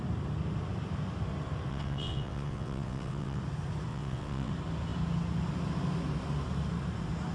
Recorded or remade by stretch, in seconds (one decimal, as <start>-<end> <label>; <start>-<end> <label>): 0.0-1.7 recorded; 1.7-3.4 remade; 3.4-3.9 recorded; 3.9-4.5 remade; 4.5-7.3 recorded